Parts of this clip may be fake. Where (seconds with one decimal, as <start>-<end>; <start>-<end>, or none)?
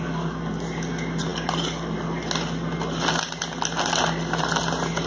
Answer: none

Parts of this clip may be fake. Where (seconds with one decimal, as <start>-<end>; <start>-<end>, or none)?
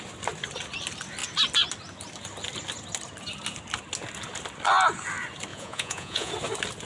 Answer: 5.5-6.3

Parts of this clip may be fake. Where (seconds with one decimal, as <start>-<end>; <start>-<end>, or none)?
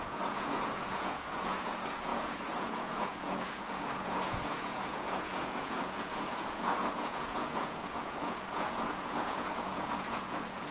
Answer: 0.0-10.7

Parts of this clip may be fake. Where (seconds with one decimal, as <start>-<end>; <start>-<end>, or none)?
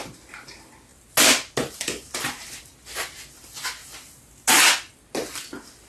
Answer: none